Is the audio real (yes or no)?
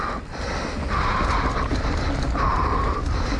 yes